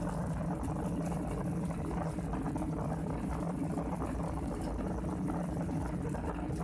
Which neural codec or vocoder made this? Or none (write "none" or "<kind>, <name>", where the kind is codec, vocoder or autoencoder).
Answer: none